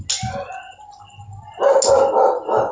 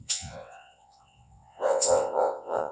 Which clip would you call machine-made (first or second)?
second